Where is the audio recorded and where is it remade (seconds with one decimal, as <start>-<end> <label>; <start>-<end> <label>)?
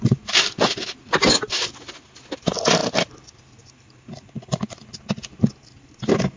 0.0-6.4 recorded